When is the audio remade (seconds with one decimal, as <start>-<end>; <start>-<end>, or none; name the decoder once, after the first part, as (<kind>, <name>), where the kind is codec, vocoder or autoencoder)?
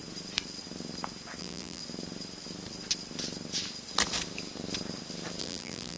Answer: 1.4-1.8 (vocoder, BigVGAN v2); 5.4-6.0